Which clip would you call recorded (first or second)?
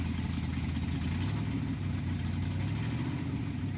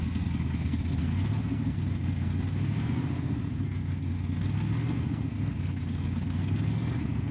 first